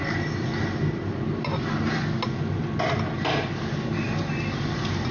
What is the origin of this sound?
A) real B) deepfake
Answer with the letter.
A